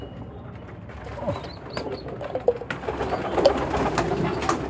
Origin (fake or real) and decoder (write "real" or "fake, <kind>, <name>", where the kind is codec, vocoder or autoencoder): fake, vocoder, BigVGAN v2